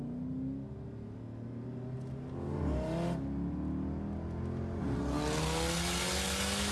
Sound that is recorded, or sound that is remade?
recorded